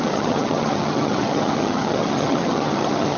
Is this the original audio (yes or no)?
no